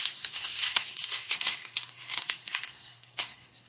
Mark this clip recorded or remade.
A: remade